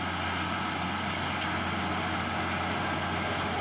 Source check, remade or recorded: recorded